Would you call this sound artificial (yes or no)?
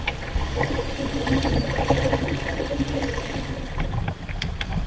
no